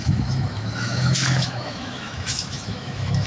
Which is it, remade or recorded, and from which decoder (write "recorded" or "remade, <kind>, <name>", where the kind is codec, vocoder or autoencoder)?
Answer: remade, autoencoder, DAC-VAE